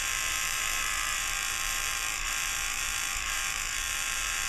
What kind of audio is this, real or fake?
fake